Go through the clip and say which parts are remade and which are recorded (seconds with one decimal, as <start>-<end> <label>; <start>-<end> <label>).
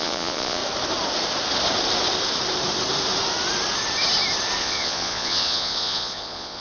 0.0-0.6 remade; 0.6-4.6 recorded; 4.6-6.6 remade